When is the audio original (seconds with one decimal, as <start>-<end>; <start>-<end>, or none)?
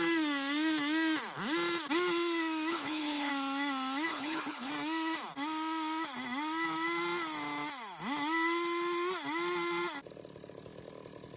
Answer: 0.0-2.7; 3.3-4.1; 4.7-11.4